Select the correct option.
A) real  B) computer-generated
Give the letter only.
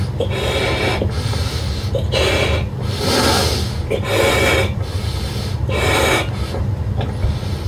A